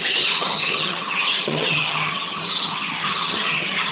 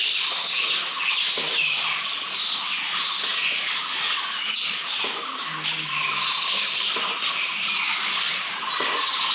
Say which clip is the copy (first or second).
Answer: first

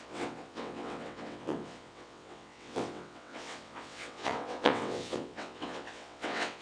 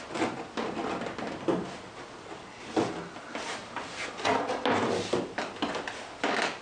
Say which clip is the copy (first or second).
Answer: first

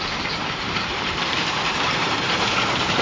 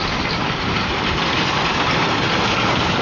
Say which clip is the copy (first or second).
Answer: first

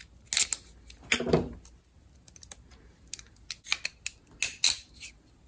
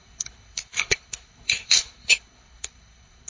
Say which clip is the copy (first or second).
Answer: second